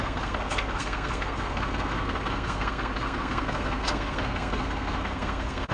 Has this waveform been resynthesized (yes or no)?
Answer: yes